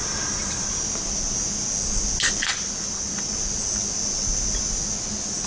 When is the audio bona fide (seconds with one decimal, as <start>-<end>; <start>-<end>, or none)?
1.1-2.5; 3.3-5.5